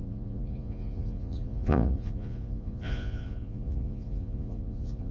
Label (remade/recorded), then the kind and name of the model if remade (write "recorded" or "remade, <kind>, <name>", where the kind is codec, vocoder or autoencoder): remade, vocoder, Vocos